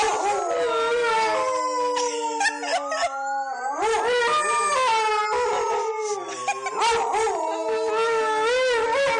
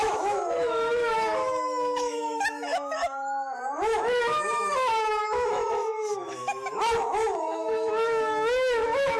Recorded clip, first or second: first